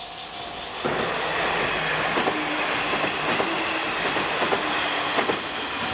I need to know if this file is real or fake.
real